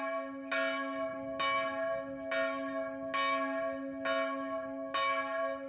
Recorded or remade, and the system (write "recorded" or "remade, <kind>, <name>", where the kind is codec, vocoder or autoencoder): recorded